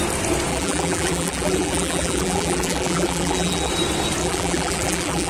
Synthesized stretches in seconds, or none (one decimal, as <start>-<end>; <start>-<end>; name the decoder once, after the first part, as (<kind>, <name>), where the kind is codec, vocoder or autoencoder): 0.5-3.7 (vocoder, BigVGAN v2); 4.2-5.3